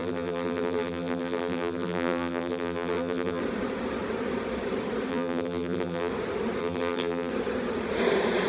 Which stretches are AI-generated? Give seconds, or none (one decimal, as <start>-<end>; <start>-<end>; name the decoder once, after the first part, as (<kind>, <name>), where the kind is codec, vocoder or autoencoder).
0.0-3.4 (vocoder, BigVGAN v2); 5.1-6.1; 6.6-7.3